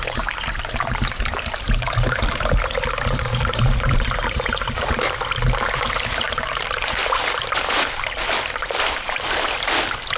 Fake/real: real